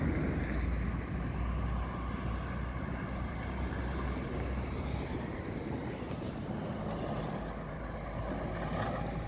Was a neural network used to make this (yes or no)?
no